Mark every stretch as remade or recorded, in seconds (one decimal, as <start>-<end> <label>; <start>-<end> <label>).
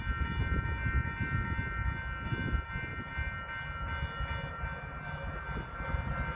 0.0-6.4 recorded